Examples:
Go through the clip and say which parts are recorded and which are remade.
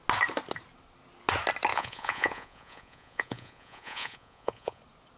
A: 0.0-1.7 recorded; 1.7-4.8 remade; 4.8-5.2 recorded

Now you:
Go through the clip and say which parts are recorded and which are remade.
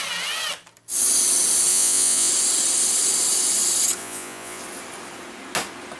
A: 0.0-1.7 recorded; 1.7-2.3 remade; 2.3-4.0 recorded; 4.0-4.6 remade; 4.6-6.0 recorded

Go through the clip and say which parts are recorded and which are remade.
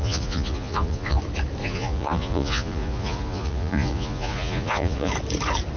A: 0.0-1.2 remade; 1.2-1.6 recorded; 1.6-5.1 remade; 5.1-5.8 recorded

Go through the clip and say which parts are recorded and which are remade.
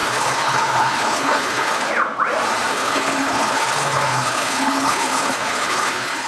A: 0.0-1.9 remade; 1.9-2.7 recorded; 2.7-6.3 remade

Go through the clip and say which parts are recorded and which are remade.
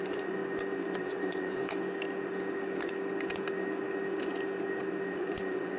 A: 0.0-0.4 remade; 0.4-1.0 recorded; 1.0-1.6 remade; 1.6-5.1 recorded; 5.1-5.8 remade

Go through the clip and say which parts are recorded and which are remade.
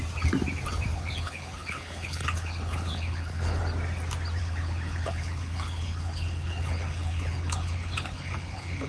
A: 0.0-0.9 recorded; 0.9-3.6 remade; 3.6-4.4 recorded; 4.4-8.9 remade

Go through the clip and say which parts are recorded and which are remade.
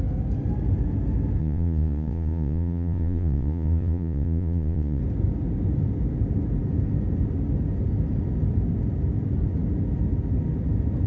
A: 0.0-1.4 recorded; 1.4-5.0 remade; 5.0-11.1 recorded